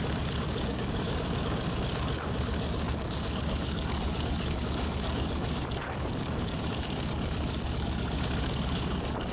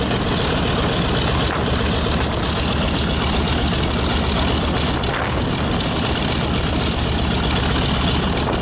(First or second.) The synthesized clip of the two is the first